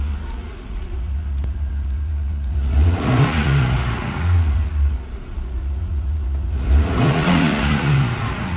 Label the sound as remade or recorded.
remade